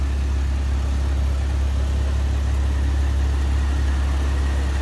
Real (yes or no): yes